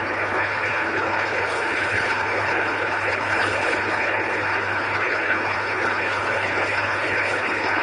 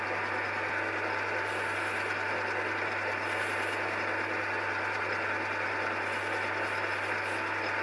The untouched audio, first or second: second